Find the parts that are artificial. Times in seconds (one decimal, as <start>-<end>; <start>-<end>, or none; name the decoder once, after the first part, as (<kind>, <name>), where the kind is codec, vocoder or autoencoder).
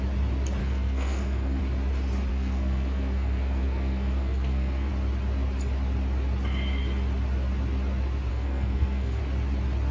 0.6-1.6 (codec, SNAC); 2.3-4.9; 8.3-9.2